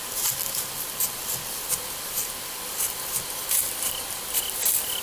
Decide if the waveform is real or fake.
fake